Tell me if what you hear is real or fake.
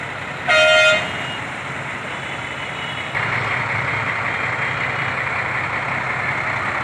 real